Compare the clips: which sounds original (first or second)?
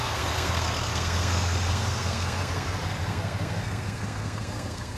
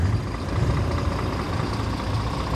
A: second